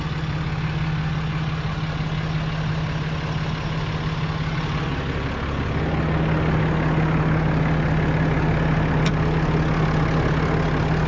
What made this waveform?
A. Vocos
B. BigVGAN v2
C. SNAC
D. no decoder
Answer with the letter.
D